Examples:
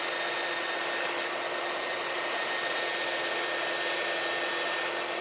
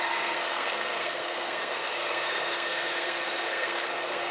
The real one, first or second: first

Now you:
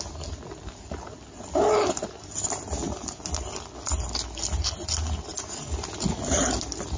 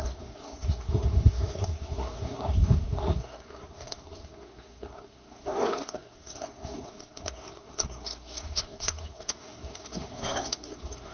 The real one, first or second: first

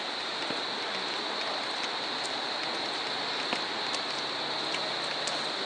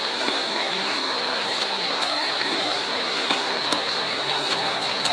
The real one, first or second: first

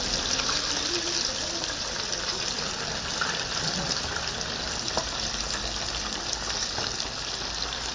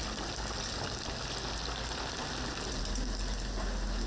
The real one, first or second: second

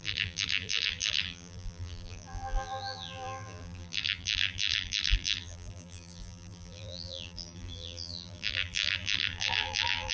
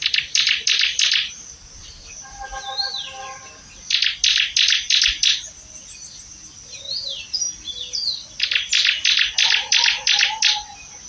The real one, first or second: second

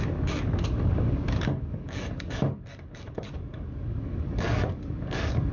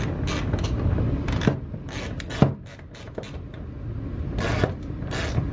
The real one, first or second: second